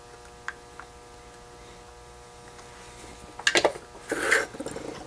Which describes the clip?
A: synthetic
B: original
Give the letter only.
B